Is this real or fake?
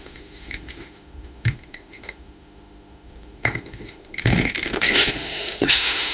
fake